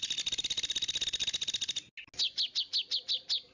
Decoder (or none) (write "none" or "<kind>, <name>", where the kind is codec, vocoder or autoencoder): none